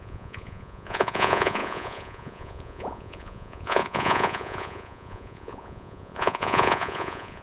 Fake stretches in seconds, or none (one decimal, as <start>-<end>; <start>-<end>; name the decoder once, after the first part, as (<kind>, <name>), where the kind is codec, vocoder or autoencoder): 0.0-7.4 (vocoder, Vocos)